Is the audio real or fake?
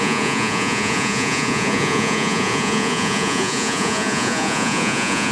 fake